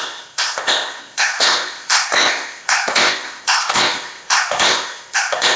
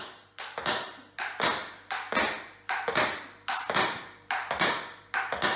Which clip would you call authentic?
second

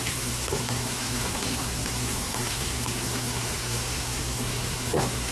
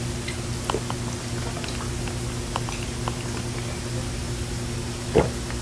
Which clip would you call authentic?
second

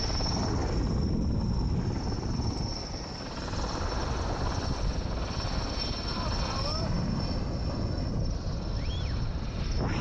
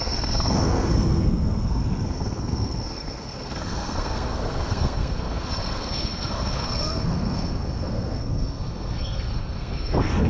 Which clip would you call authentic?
first